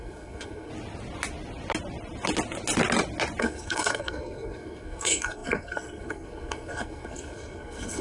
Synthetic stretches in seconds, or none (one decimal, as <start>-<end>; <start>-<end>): 0.0-0.7; 3.4-8.0